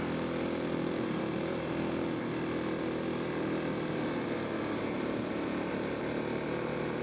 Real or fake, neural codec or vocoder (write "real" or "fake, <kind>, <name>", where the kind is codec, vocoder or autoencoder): real